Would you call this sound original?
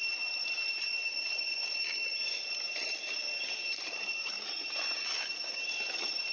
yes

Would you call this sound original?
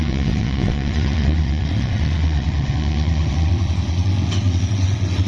no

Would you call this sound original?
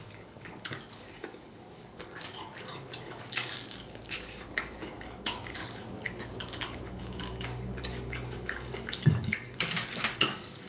no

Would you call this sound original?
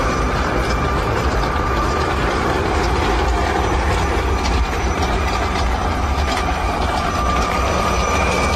no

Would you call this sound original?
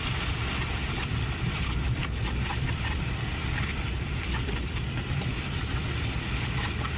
yes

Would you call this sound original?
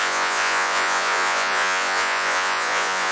no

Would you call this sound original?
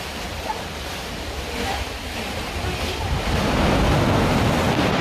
yes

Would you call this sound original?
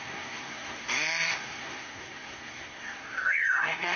no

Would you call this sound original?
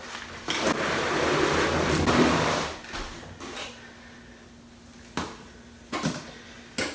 yes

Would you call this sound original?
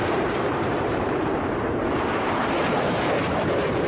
no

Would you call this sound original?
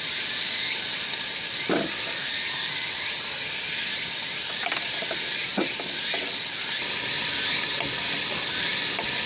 yes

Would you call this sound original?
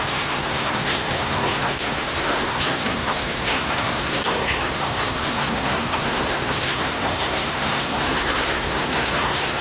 no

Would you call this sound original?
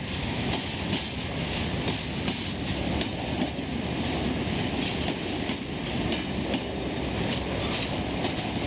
yes